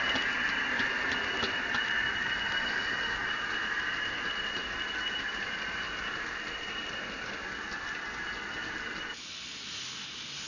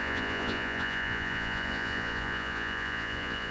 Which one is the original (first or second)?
first